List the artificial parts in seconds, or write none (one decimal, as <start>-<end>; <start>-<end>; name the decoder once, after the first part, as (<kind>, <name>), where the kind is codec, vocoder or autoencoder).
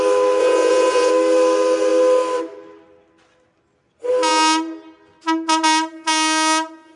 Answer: 0.4-1.1 (vocoder, Vocos)